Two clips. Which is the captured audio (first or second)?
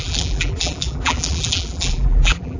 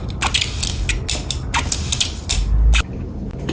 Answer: second